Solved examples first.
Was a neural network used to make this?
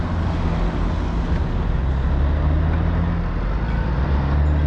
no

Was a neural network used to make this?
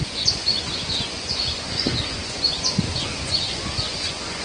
yes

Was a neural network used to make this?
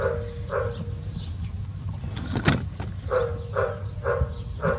no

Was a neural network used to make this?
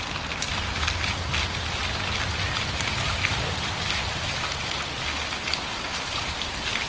no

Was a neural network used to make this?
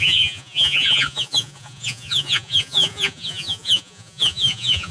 yes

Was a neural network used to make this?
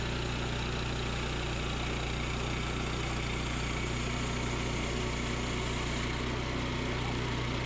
no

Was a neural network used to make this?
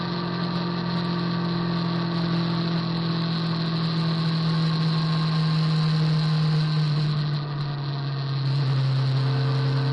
no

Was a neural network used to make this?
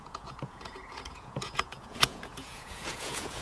yes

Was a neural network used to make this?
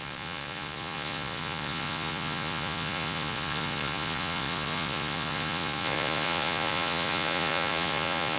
yes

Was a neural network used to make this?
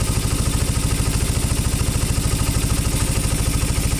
no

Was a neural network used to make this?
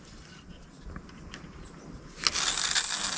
no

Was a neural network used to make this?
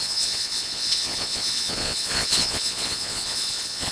yes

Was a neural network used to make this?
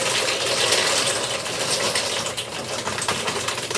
no